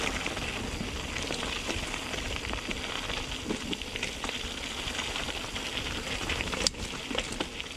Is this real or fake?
real